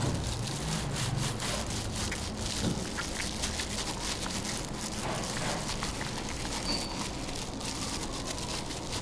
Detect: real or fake real